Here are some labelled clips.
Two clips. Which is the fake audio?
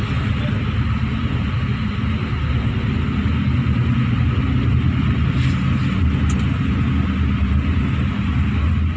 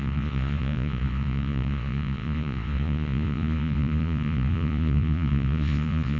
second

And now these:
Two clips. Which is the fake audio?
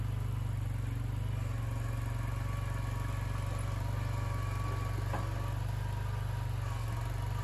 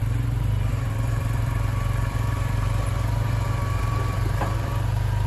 second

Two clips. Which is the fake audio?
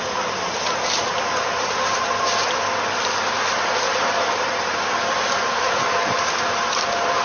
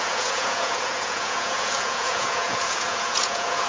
second